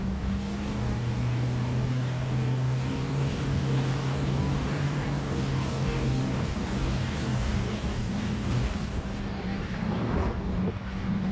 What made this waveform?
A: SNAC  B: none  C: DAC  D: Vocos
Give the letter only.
C